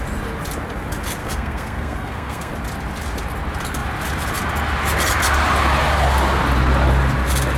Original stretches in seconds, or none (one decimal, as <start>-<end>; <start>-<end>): 0.0-1.2; 2.5-7.6